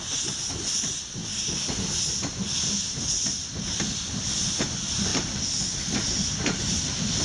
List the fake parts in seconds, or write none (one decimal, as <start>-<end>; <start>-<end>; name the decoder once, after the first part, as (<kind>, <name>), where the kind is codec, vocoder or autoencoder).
none